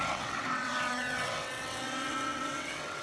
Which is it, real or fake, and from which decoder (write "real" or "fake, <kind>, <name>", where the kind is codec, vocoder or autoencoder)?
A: fake, vocoder, WaveNeXt